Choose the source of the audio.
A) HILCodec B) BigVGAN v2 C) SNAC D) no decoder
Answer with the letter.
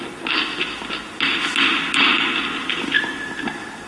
D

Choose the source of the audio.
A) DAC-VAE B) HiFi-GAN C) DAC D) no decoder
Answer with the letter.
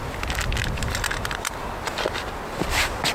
D